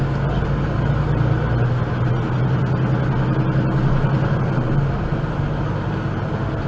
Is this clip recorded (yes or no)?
yes